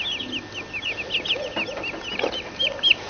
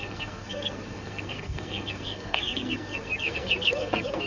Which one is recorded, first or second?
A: first